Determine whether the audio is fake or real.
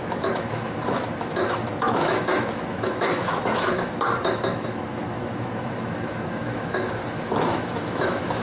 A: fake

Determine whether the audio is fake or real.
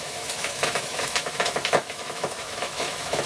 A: fake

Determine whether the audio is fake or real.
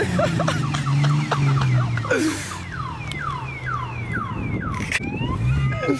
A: real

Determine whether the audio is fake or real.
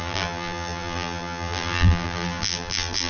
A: fake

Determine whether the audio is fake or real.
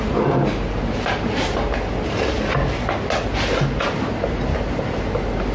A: real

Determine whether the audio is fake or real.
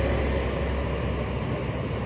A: real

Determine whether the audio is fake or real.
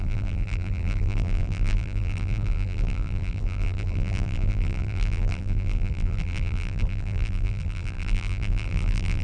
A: fake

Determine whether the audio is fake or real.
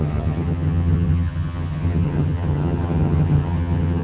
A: fake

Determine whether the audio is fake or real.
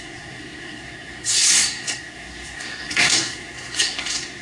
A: fake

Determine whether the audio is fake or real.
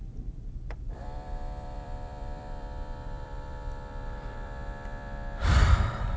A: fake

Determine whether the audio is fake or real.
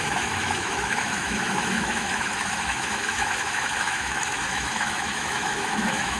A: fake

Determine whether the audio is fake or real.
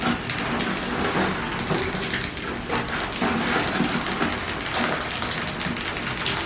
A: real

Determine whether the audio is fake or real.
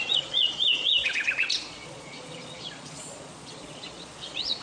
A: fake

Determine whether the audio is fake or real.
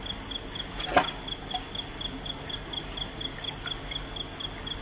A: real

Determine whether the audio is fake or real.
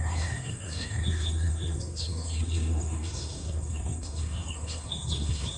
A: fake